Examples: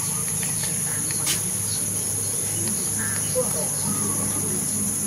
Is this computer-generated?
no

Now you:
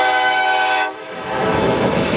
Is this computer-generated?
yes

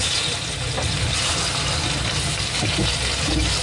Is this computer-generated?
no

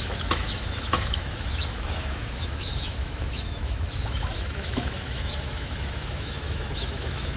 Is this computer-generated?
yes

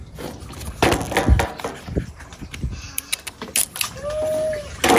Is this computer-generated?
no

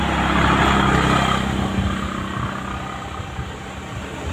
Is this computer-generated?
no